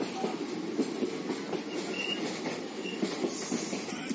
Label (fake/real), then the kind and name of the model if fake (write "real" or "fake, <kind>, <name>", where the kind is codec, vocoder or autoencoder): real